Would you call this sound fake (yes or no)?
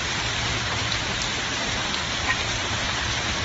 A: no